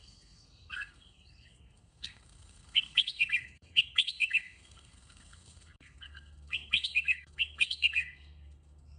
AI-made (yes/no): yes